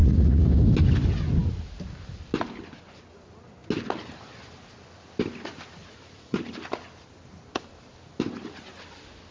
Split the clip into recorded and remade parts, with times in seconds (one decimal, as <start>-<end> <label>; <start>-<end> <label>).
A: 0.0-0.5 remade; 0.5-5.8 recorded; 5.8-6.4 remade; 6.4-9.3 recorded